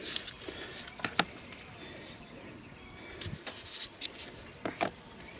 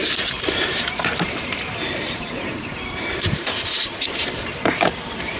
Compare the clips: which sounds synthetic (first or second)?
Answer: second